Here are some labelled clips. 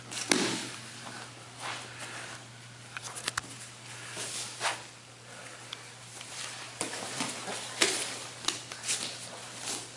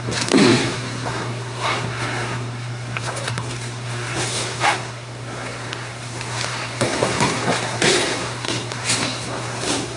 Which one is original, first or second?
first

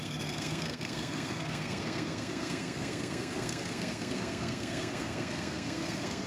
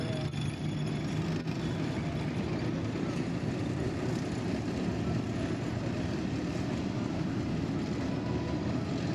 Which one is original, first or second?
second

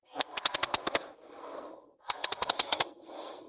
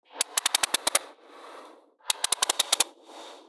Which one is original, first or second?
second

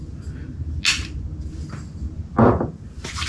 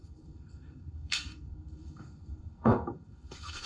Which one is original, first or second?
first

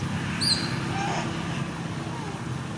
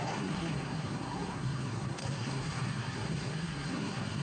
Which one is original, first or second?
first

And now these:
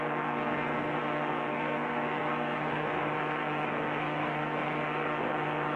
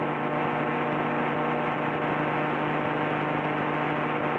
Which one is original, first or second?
second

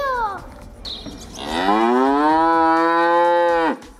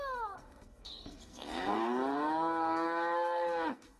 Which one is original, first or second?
first